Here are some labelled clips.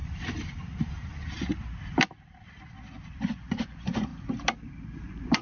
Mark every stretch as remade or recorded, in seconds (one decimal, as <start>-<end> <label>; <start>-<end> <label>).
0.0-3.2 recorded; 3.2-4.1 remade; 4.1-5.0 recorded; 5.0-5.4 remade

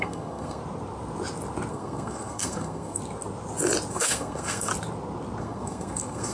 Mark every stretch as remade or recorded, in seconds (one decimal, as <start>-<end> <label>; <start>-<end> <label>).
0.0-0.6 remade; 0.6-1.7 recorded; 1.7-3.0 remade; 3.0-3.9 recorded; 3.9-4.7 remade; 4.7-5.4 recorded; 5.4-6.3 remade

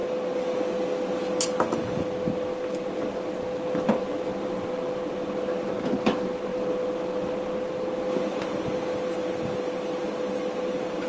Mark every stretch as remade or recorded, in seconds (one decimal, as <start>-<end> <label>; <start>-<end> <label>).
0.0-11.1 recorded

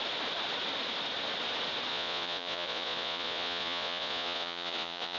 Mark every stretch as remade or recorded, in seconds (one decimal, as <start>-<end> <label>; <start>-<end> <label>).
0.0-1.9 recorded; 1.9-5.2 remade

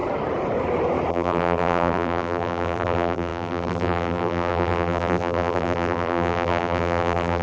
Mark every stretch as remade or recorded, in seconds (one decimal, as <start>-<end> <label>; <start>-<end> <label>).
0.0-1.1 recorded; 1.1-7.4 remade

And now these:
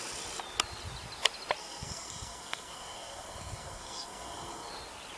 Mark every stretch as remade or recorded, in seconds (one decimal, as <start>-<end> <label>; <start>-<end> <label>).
0.0-1.6 recorded; 1.6-4.7 remade; 4.7-5.2 recorded